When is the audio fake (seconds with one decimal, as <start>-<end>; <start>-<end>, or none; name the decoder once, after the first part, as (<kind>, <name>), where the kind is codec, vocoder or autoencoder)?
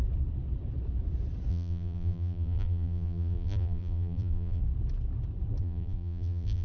1.5-4.6 (vocoder, BigVGAN v2); 5.6-6.6